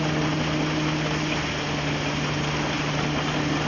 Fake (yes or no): no